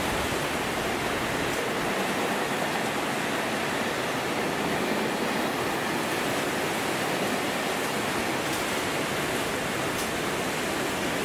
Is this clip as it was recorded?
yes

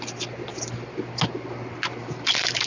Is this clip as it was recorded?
yes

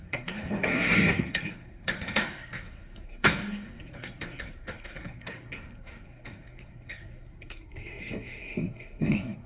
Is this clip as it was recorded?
no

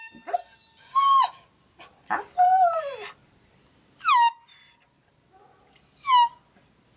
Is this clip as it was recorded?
yes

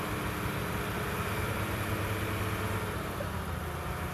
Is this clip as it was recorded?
yes